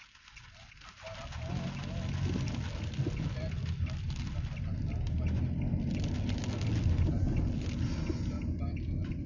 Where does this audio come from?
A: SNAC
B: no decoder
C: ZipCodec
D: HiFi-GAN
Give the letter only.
B